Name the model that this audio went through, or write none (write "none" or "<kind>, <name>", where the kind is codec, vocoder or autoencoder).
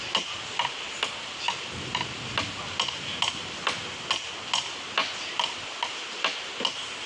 none